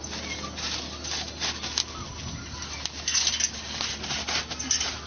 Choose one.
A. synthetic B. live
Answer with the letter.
B